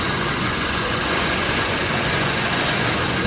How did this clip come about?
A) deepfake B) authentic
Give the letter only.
A